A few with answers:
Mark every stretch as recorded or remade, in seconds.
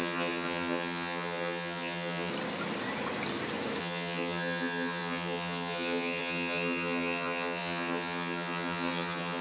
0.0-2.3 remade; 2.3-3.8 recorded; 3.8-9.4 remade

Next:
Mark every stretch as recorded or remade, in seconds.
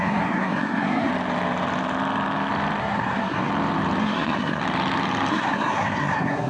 0.0-1.1 remade; 1.1-2.8 recorded; 2.8-3.5 remade; 3.5-4.0 recorded; 4.0-4.6 remade; 4.6-5.3 recorded; 5.3-6.5 remade